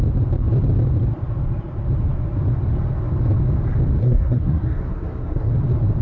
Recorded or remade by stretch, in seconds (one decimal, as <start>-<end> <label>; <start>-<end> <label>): 0.0-4.0 recorded; 4.0-5.5 remade; 5.5-6.0 recorded